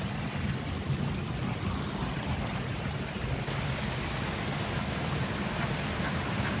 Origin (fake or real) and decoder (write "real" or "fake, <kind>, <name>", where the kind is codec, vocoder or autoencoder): real